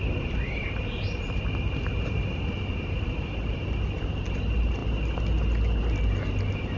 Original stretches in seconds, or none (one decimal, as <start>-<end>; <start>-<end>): 0.0-6.8